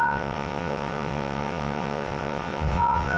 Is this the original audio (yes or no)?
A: no